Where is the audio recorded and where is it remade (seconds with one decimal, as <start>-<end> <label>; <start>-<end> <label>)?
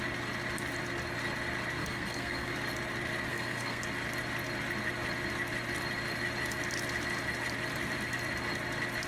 0.0-1.8 recorded; 1.8-2.5 remade; 2.5-3.3 recorded; 3.3-3.8 remade; 3.8-9.1 recorded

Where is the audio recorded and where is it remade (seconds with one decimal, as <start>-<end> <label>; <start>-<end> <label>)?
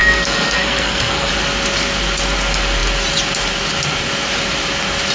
0.0-1.3 remade; 1.3-5.1 recorded